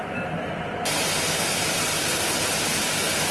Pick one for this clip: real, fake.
real